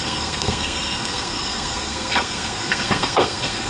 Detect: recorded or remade remade